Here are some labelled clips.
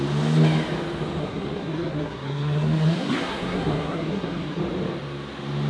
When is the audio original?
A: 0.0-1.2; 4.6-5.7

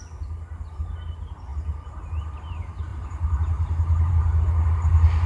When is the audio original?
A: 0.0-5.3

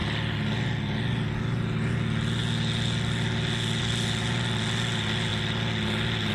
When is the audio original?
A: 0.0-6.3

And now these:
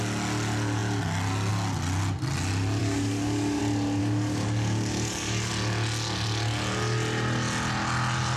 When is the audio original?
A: 0.0-2.8; 3.6-4.0; 5.5-8.4

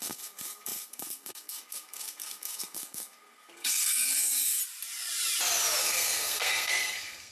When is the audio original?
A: 4.6-5.8

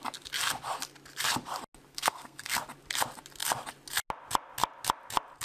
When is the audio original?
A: 0.0-1.9; 2.6-5.4

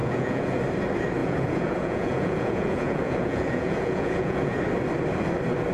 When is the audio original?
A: 0.6-1.2; 4.6-5.7